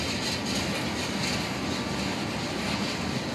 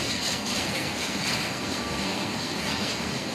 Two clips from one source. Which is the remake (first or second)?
second